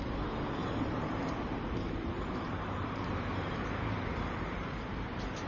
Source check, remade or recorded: remade